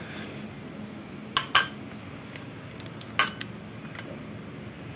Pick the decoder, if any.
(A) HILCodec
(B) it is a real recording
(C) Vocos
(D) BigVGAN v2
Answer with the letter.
B